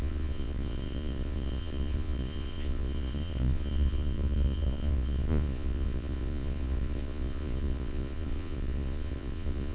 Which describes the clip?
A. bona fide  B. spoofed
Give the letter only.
B